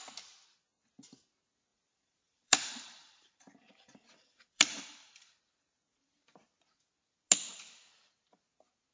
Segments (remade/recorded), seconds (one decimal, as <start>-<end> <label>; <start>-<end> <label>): 0.0-1.7 recorded; 1.7-5.4 remade; 5.4-8.9 recorded